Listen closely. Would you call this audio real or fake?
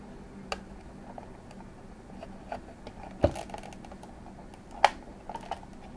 real